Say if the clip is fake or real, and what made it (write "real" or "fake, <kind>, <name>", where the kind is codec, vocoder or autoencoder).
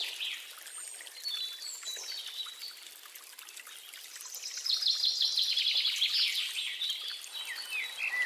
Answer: real